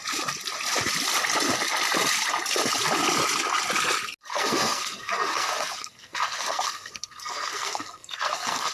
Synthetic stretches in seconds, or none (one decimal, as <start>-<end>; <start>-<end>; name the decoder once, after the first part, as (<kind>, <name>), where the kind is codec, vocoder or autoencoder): 4.3-8.7 (codec, SNAC)